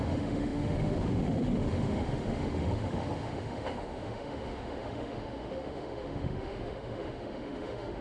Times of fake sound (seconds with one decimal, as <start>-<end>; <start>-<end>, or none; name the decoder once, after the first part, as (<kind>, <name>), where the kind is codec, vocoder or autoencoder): 0.0-8.0 (autoencoder, DAC-VAE)